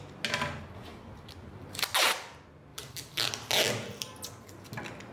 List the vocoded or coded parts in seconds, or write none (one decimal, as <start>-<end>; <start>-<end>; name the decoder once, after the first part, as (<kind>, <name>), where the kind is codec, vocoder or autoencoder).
0.9-1.7 (vocoder, BigVGAN v2); 2.7-3.3